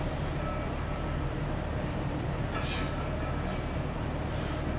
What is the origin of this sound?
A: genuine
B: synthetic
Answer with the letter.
A